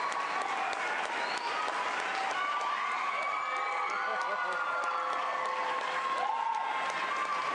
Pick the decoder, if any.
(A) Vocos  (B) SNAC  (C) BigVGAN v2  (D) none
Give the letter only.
D